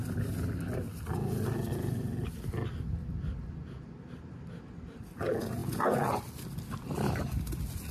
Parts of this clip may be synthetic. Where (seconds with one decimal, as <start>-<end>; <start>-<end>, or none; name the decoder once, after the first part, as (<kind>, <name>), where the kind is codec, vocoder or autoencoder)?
none